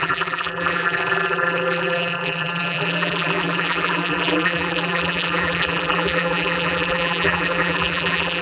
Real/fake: fake